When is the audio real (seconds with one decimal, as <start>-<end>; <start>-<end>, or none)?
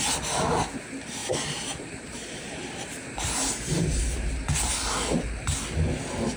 0.0-1.2; 4.7-6.4